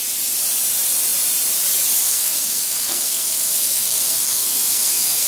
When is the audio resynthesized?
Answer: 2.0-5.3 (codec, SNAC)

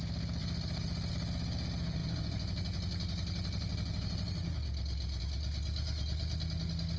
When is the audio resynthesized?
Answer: none

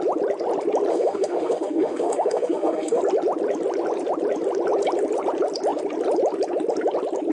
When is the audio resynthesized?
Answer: 0.9-3.0 (autoencoder, DAC-VAE)

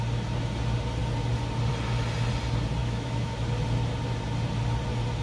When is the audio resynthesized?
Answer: 2.8-3.4 (autoencoder, DAC-VAE)

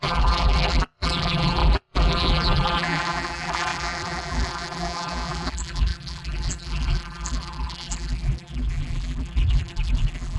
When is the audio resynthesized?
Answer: 0.0-10.4 (vocoder, BigVGAN v2)

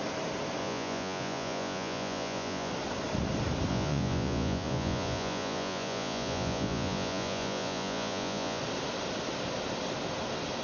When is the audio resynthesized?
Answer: 0.6-2.7 (vocoder, Vocos); 3.7-8.6